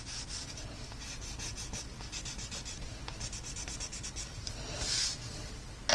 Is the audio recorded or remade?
recorded